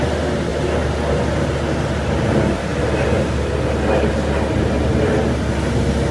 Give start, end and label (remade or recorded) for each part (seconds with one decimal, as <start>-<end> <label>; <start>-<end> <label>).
0.0-6.1 recorded